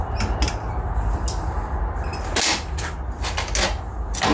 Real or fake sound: real